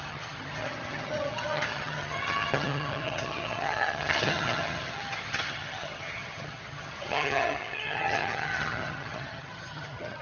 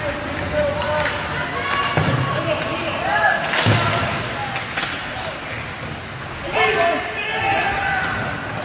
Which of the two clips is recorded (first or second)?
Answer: second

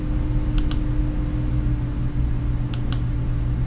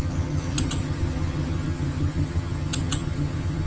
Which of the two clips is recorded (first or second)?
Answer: first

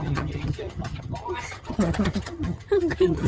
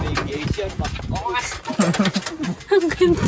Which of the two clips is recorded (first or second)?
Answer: second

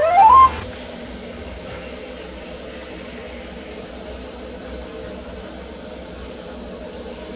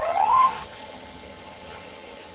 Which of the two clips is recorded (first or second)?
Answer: first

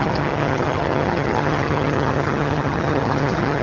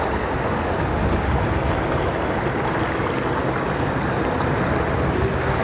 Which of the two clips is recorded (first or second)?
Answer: second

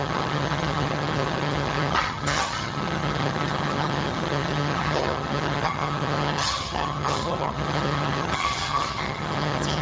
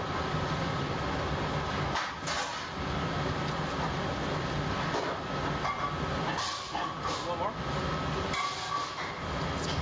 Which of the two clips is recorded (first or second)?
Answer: second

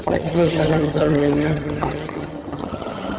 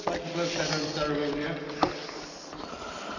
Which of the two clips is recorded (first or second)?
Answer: second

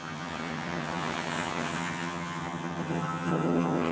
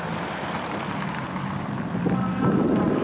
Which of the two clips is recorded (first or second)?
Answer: second